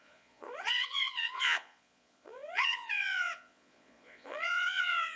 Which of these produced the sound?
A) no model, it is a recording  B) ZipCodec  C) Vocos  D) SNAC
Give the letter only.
C